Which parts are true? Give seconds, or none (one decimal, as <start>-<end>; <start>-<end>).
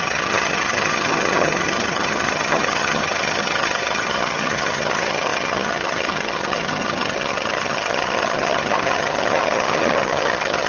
none